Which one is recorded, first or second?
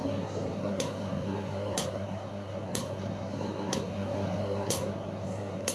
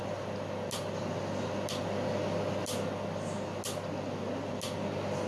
second